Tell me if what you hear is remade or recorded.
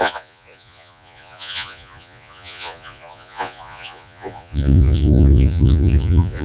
remade